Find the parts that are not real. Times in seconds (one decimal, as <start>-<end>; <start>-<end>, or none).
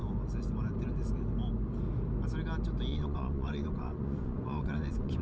2.9-5.2